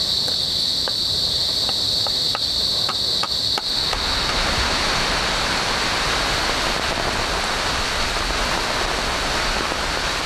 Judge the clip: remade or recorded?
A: recorded